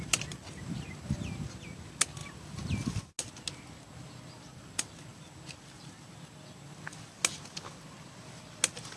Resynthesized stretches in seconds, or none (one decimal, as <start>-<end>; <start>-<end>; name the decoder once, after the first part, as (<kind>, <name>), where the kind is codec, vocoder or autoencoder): none